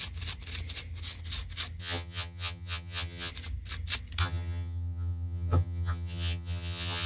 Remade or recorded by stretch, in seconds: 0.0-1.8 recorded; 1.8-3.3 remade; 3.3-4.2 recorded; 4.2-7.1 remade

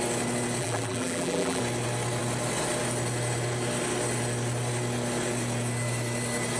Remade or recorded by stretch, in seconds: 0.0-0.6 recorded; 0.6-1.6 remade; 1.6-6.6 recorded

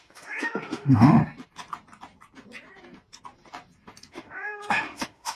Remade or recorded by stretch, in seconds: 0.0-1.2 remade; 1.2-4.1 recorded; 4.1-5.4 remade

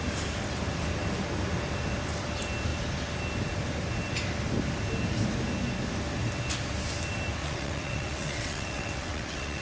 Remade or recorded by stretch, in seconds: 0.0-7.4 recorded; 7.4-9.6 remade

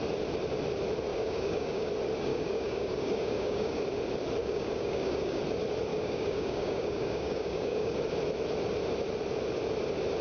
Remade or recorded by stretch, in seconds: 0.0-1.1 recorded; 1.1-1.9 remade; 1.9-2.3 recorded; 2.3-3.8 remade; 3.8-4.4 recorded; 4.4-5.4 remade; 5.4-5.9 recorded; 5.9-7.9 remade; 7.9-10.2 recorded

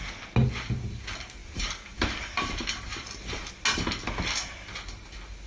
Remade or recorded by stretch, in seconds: 0.0-1.4 recorded; 1.4-3.5 remade; 3.5-5.5 recorded

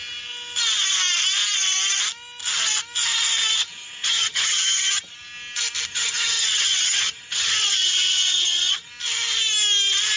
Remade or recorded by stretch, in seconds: 0.0-3.6 recorded; 3.6-5.0 remade; 5.0-5.9 recorded; 5.9-8.9 remade; 8.9-10.2 recorded

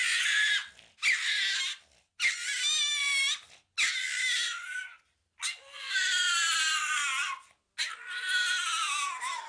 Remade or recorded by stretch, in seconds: 0.0-9.5 recorded